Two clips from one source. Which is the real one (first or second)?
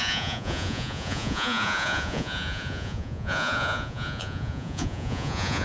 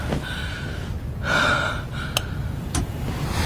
second